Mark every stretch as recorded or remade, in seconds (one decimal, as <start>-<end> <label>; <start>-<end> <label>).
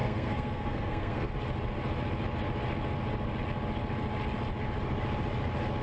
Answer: 0.0-1.3 remade; 1.3-5.8 recorded